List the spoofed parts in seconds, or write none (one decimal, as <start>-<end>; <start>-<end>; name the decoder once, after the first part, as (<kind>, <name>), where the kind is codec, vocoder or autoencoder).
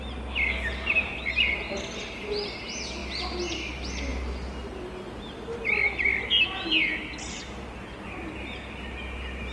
none